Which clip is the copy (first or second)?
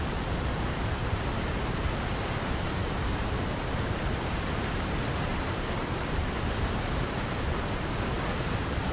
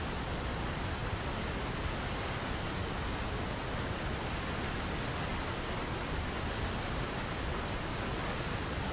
first